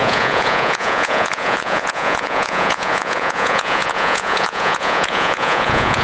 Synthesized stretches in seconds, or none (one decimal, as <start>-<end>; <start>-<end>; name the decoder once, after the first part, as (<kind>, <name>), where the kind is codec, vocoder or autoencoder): 0.0-6.0 (vocoder, Vocos)